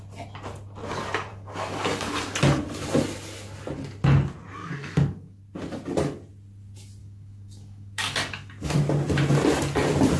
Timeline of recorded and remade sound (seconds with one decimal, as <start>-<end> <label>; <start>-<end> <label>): 0.0-1.3 recorded; 1.3-2.1 remade; 2.1-4.6 recorded; 4.6-5.4 remade; 5.4-7.0 recorded; 7.0-8.8 remade; 8.8-10.2 recorded